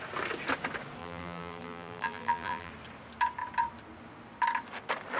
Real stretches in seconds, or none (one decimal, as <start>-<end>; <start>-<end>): 0.0-1.0; 2.7-5.2